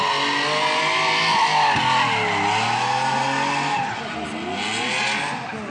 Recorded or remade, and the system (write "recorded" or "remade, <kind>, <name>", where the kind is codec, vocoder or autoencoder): recorded